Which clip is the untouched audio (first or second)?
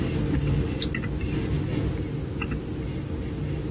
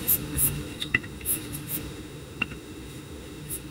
first